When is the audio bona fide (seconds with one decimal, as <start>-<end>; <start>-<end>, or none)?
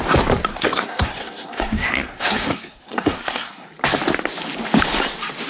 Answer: 0.0-0.5; 3.7-5.5